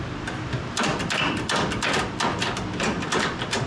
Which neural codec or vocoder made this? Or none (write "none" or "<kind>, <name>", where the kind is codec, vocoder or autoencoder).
vocoder, BigVGAN v2